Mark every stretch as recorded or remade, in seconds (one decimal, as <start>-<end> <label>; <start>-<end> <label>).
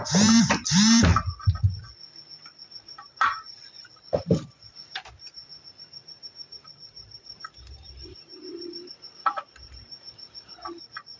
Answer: 0.0-1.0 remade; 1.0-2.7 recorded; 2.7-3.6 remade; 3.6-4.9 recorded; 4.9-11.2 remade